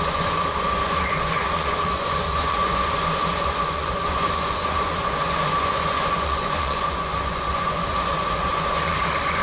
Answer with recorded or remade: remade